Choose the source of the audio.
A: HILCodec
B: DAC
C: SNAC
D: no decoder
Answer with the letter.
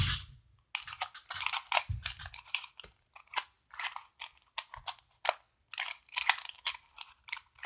D